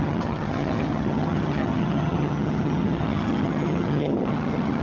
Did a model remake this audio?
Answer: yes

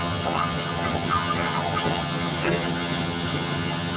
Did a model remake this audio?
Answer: yes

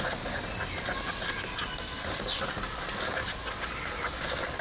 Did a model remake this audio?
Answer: no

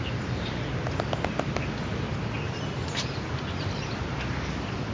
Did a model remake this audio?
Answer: no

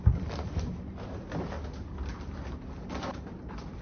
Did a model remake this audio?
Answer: no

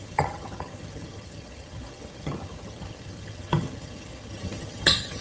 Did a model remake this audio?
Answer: yes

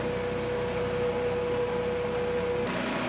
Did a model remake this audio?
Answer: no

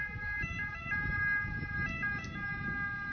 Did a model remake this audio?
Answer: no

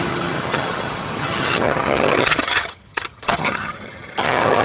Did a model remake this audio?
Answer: yes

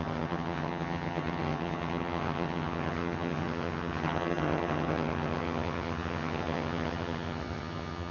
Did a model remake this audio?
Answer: yes